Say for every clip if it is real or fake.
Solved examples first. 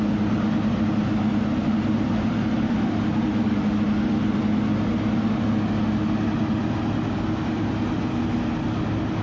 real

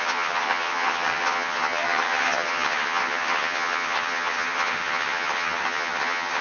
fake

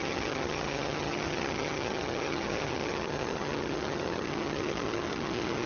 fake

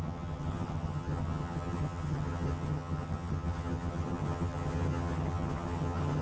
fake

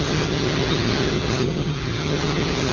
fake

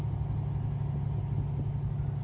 real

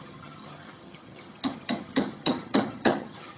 fake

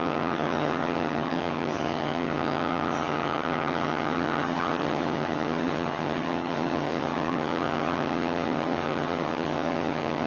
fake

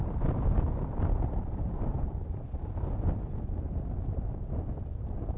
real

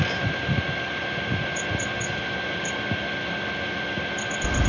real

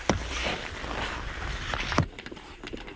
real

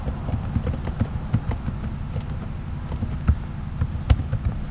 real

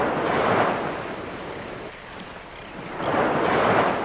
real